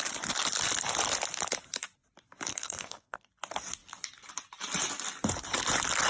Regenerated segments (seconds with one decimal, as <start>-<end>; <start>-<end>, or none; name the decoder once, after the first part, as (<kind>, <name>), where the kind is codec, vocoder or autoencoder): 2.5-3.3 (codec, SNAC)